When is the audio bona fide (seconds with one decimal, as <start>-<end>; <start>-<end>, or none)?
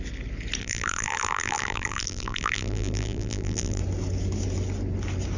0.0-0.6; 3.8-5.4